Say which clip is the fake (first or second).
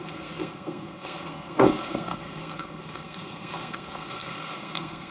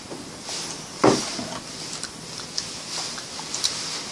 first